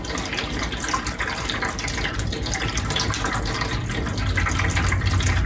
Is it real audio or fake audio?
real